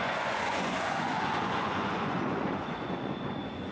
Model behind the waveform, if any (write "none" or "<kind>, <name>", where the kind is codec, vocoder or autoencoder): vocoder, Vocos